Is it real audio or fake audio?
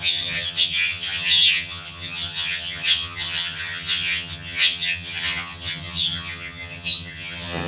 fake